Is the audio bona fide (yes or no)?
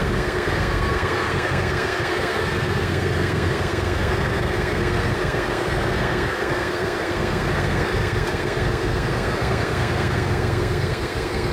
no